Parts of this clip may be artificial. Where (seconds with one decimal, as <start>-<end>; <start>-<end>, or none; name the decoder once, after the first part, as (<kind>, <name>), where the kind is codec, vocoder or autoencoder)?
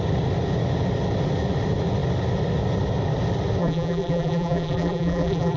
3.6-5.6 (vocoder, BigVGAN v2)